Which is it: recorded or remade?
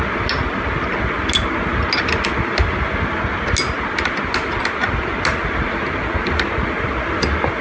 recorded